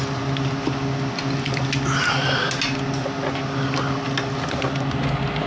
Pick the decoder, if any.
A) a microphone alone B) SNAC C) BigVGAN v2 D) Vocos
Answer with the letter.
A